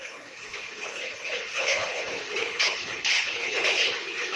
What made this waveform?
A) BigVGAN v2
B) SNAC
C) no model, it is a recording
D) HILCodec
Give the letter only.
D